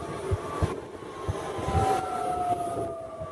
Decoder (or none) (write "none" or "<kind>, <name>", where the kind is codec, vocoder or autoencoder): none